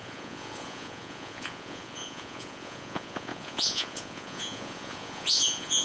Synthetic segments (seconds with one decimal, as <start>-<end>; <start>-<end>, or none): 0.0-5.8